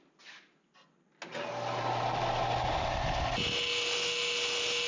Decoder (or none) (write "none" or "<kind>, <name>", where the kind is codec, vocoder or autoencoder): none